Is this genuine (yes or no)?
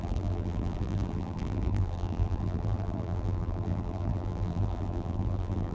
no